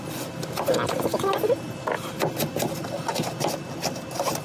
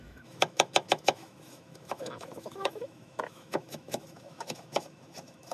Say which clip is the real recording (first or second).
first